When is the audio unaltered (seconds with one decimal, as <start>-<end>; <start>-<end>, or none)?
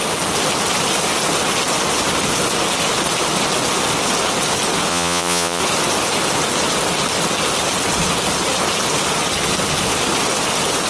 0.0-4.9; 5.6-10.9